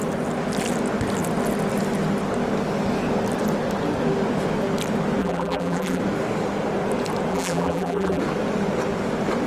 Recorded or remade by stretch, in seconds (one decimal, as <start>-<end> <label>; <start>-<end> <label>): 0.0-5.2 recorded; 5.2-6.0 remade; 6.0-7.3 recorded; 7.3-8.2 remade; 8.2-9.5 recorded